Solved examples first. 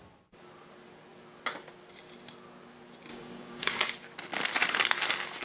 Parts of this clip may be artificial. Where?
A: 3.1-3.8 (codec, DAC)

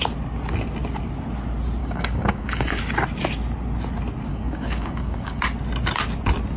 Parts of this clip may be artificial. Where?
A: 1.8-2.8 (codec, DAC); 4.3-5.4

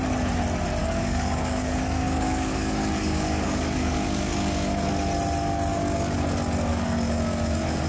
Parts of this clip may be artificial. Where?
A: 0.8-4.9 (codec, DAC); 5.7-6.3; 6.7-7.9

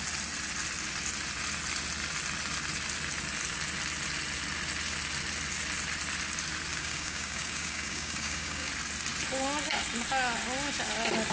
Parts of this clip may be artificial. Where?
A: 6.7-8.7 (codec, DAC)

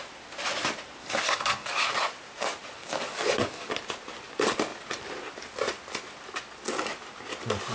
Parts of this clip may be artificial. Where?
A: 1.0-1.9 (codec, DAC); 2.8-3.7